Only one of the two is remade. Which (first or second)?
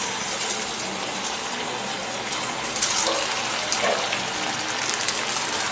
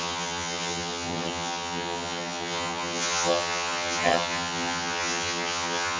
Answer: second